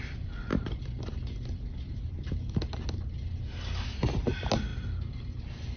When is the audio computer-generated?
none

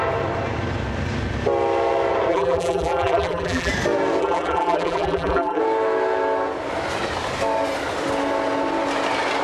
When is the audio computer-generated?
2.3-3.7 (vocoder, BigVGAN v2); 4.2-5.6

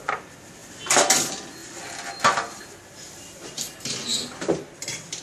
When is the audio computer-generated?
1.6-2.6 (vocoder, BigVGAN v2); 4.1-5.2

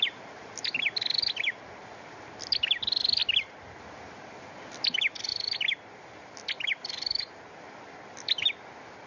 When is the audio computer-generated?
none